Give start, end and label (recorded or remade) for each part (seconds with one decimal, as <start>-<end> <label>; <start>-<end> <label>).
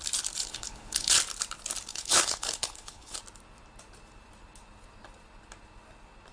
0.0-0.4 recorded; 0.4-1.1 remade; 1.1-1.9 recorded; 1.9-3.2 remade; 3.2-6.3 recorded